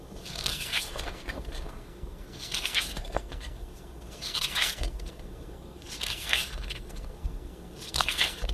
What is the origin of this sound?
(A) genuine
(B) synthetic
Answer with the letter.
B